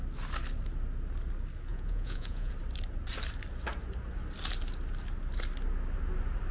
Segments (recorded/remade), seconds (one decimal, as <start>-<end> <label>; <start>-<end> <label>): 0.0-1.7 recorded; 1.7-2.5 remade; 2.5-6.5 recorded